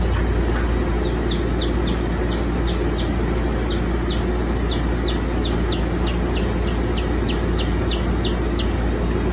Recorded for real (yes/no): yes